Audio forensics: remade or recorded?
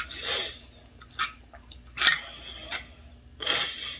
recorded